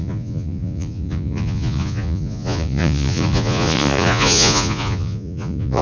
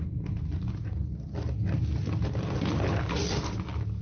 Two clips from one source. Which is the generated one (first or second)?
first